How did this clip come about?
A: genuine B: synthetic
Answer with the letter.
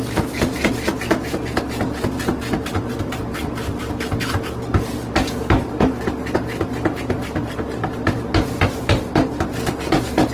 A